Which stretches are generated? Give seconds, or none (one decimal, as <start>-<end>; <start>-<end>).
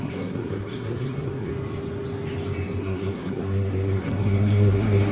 0.0-1.5; 2.8-5.1